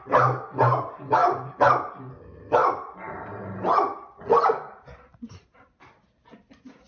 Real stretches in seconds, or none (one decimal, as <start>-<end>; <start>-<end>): 0.0-6.9